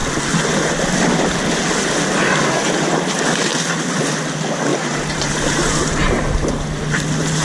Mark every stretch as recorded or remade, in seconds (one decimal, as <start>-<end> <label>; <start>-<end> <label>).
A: 0.0-4.7 recorded; 4.7-6.5 remade; 6.5-7.4 recorded